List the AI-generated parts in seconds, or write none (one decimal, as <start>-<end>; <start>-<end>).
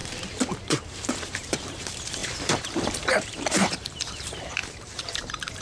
0.6-5.6